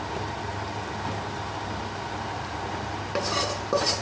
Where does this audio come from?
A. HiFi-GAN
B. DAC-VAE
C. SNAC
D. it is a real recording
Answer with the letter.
D